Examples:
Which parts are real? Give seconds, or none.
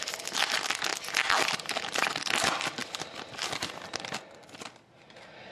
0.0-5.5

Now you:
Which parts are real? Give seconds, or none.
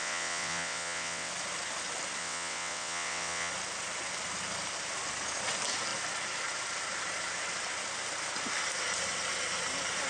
1.3-2.2; 3.5-10.1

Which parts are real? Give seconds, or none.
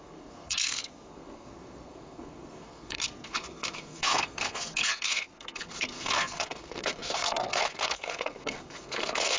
none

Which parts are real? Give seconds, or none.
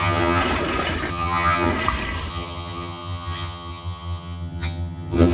0.4-1.1; 1.7-2.3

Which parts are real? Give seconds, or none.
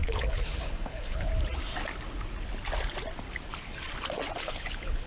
1.3-4.4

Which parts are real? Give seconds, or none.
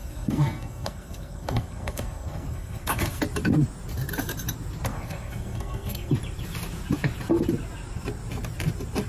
3.2-4.9; 6.1-9.1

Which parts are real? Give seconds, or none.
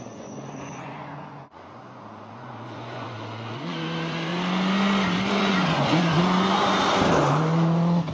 4.3-5.4; 6.2-8.1